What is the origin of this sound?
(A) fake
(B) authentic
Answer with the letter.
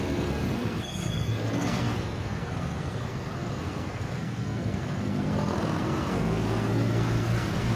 A